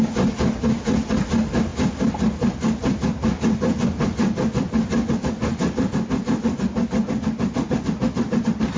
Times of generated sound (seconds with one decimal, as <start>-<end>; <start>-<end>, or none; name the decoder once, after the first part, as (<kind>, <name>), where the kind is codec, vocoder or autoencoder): none